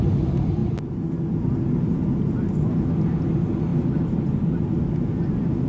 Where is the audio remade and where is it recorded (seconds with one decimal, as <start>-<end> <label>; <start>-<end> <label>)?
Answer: 0.0-5.7 recorded